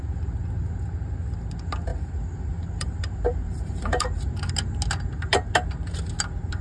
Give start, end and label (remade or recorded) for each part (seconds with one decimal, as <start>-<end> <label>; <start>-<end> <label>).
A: 0.0-1.9 recorded; 1.9-4.5 remade; 4.5-6.6 recorded